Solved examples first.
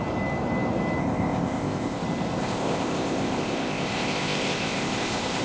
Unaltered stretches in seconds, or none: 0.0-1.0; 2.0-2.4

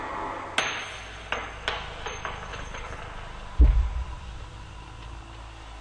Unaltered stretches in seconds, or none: 0.0-2.5; 3.0-5.8

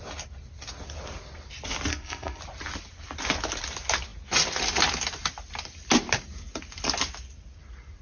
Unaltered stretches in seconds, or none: 0.0-1.9; 2.4-8.0

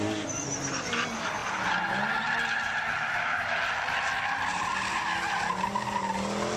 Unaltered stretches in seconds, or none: 0.0-6.6

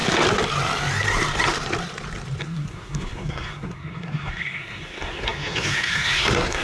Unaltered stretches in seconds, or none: 0.0-2.4

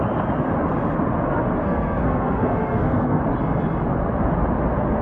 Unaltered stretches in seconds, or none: 0.0-1.6; 3.2-5.0